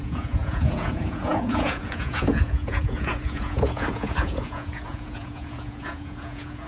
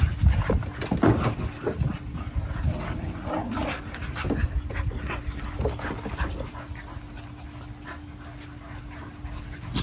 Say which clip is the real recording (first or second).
second